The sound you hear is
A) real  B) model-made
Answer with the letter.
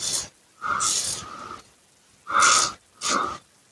A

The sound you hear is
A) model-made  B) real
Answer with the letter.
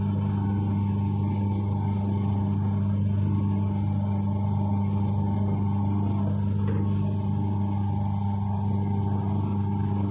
B